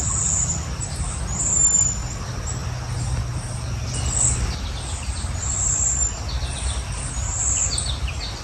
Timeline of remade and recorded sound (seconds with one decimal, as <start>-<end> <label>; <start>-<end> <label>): 0.0-8.4 recorded